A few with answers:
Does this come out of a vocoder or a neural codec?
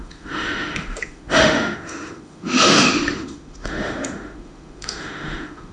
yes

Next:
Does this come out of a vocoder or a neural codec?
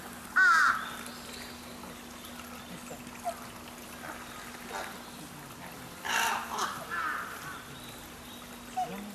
no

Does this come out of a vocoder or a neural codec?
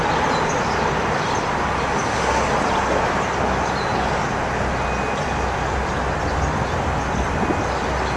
no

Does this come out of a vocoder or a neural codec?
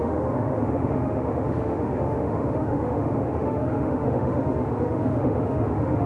yes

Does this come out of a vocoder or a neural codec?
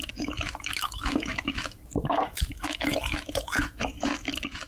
yes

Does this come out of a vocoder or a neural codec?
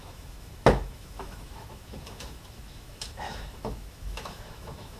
yes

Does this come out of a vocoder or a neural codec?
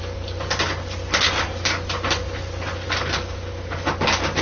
no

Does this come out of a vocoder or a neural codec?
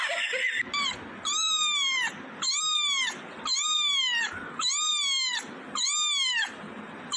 no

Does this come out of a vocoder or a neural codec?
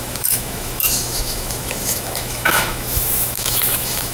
yes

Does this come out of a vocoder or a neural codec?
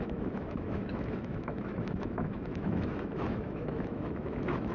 yes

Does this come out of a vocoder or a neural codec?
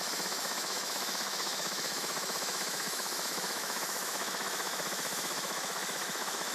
yes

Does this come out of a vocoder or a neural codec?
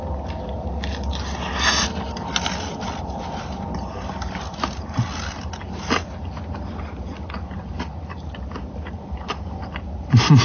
no